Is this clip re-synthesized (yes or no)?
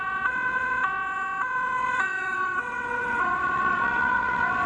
yes